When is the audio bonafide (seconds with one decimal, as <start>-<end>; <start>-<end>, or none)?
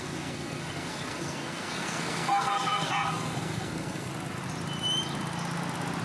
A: 4.1-6.0